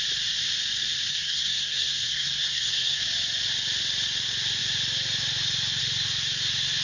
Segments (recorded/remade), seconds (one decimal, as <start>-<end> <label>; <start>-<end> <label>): 0.0-1.1 recorded; 1.1-3.0 remade; 3.0-6.8 recorded